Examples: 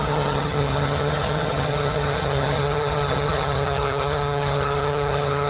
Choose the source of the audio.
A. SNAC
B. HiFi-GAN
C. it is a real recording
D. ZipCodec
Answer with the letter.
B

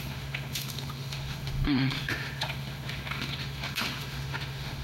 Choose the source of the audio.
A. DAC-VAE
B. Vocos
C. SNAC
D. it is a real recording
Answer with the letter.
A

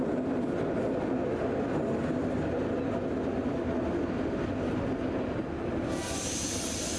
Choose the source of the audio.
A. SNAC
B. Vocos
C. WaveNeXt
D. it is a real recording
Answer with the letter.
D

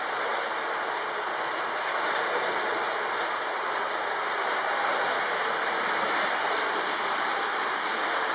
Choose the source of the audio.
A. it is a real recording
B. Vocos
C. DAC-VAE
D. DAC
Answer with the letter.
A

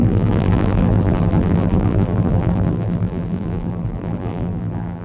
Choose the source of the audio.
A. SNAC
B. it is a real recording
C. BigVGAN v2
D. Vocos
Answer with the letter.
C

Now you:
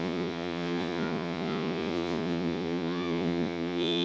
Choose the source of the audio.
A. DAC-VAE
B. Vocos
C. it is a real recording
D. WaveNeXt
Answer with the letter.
B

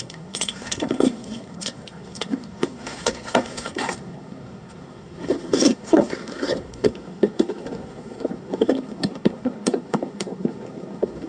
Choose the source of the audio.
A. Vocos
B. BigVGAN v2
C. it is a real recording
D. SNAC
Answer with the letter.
D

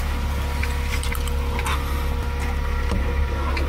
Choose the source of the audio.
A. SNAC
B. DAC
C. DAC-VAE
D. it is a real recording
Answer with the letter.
D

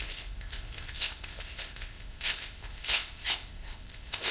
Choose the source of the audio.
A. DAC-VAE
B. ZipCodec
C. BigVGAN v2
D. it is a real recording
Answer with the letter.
B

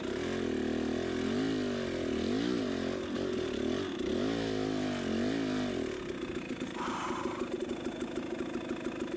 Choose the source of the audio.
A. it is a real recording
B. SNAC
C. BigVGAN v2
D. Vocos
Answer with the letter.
A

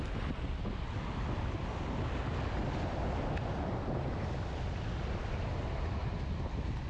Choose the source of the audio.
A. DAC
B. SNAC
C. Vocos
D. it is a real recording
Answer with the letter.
D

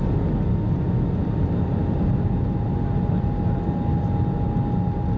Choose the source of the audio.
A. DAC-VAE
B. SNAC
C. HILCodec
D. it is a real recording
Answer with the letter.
D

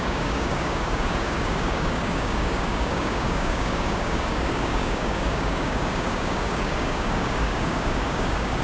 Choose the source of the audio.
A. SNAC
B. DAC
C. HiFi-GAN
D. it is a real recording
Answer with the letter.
B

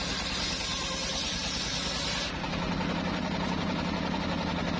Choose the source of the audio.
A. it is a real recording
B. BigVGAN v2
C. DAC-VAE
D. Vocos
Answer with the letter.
A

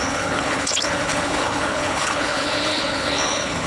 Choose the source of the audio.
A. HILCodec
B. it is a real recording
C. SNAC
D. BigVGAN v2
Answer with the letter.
A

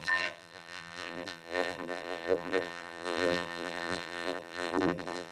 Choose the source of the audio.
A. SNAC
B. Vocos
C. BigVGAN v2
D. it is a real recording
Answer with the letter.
C